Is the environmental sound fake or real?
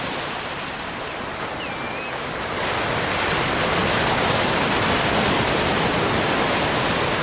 real